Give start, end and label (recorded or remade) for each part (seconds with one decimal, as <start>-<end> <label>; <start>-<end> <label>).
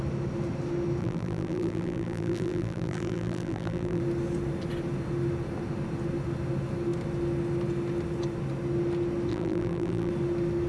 0.0-1.0 recorded; 1.0-4.0 remade; 4.0-9.3 recorded; 9.3-10.1 remade; 10.1-10.7 recorded